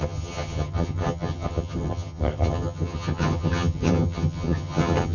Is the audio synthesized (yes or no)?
yes